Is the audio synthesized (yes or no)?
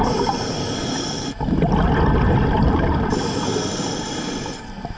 no